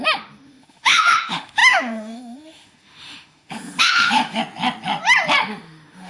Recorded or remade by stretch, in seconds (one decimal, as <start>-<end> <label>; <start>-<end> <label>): 0.0-4.4 remade; 4.4-5.4 recorded; 5.4-6.1 remade